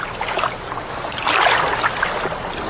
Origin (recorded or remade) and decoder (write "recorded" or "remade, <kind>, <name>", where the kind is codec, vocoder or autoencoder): recorded